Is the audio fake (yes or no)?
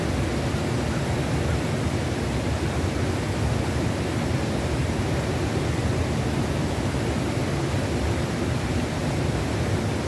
no